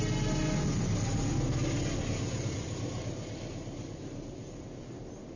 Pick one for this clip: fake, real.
real